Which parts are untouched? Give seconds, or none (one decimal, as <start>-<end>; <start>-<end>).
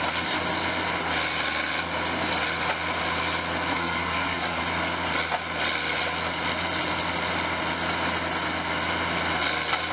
0.0-3.7; 4.6-9.9